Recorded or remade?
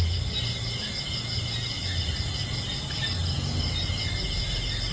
recorded